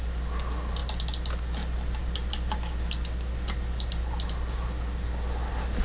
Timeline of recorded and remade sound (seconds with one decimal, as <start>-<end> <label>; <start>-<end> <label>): 0.0-5.8 recorded